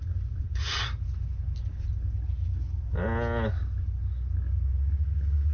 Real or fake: real